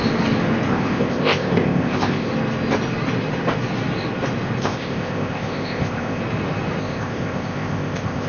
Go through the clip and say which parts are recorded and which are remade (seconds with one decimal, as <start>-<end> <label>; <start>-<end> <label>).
0.0-0.7 recorded; 0.7-2.3 remade; 2.3-4.6 recorded; 4.6-6.2 remade; 6.2-6.8 recorded; 6.8-8.3 remade